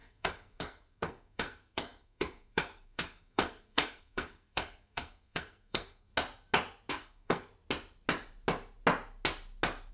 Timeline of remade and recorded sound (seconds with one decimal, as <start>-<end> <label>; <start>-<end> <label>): 0.0-6.1 remade; 6.1-6.9 recorded; 6.9-7.5 remade; 7.5-9.9 recorded